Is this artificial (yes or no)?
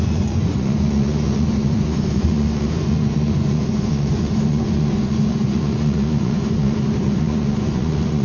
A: yes